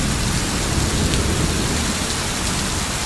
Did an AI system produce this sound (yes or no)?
no